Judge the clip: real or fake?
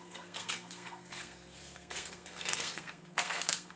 fake